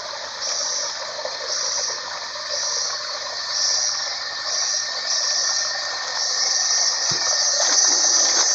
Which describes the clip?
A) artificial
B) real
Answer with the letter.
B